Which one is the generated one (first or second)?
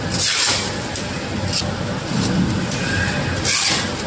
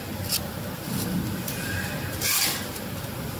second